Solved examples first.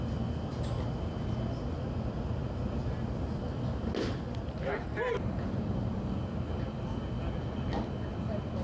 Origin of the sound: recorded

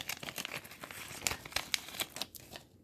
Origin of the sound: recorded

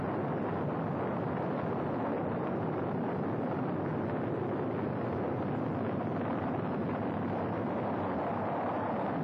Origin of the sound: recorded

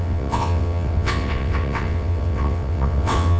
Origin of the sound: remade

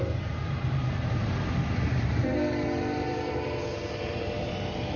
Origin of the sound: remade